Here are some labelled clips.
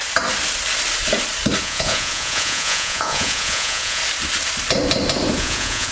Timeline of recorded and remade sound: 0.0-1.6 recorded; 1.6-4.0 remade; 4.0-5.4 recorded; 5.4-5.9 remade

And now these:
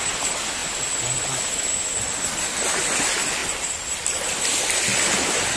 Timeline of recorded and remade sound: 0.0-5.6 recorded

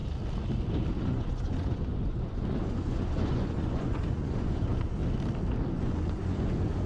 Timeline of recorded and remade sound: 0.0-0.9 recorded; 0.9-5.0 remade; 5.0-5.7 recorded; 5.7-6.9 remade

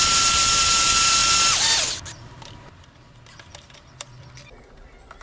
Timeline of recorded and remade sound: 0.0-5.2 recorded